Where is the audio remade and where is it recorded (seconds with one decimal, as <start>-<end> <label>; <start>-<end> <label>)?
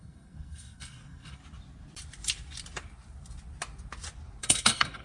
0.0-1.4 remade; 1.4-4.4 recorded; 4.4-5.0 remade